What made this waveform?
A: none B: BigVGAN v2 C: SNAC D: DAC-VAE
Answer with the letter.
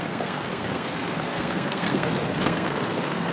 C